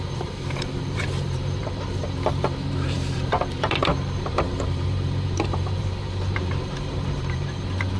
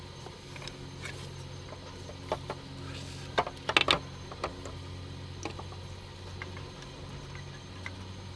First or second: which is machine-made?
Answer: first